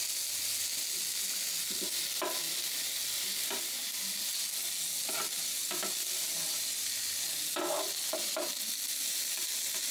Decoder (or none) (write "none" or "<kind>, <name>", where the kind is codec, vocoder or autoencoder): none